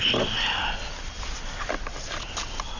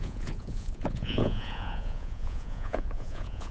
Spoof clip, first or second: second